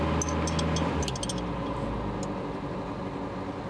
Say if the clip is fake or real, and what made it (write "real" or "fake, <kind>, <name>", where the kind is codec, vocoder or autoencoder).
real